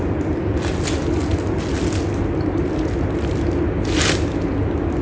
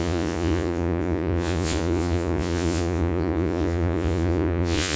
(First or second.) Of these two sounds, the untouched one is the first